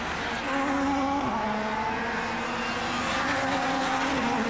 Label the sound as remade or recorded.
recorded